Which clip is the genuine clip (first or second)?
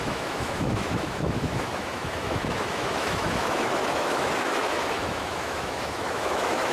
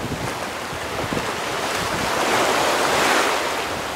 second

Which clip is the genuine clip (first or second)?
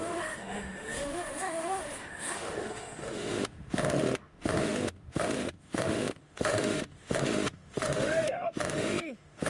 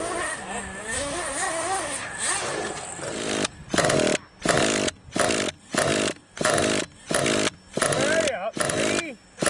second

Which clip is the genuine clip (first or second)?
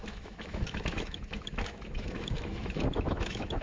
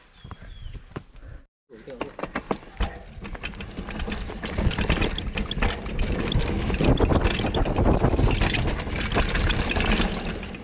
second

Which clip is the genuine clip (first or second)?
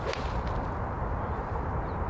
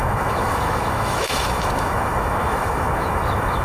first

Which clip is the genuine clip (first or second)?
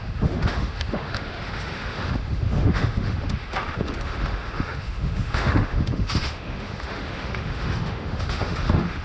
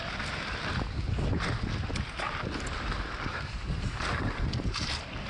second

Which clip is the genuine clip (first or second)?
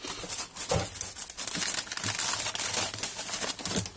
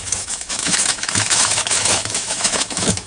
first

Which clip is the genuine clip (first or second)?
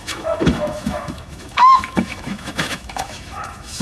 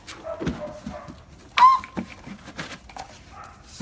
second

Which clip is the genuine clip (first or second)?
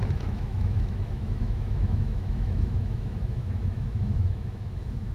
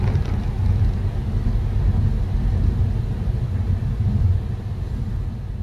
second